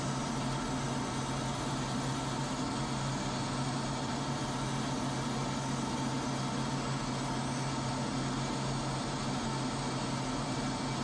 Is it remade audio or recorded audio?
recorded